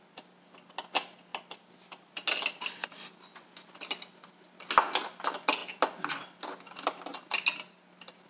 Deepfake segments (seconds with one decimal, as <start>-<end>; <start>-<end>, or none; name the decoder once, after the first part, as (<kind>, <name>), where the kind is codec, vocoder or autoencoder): none